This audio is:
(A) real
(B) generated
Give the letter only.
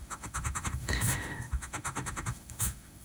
B